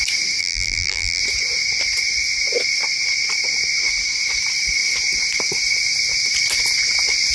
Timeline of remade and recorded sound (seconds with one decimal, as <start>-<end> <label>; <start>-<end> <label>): 0.0-0.4 recorded; 0.4-1.2 remade; 1.2-7.3 recorded